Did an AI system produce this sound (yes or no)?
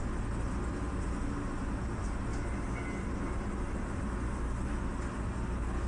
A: no